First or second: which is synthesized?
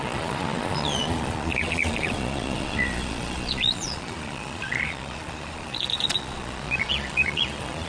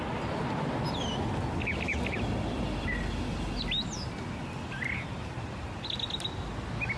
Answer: first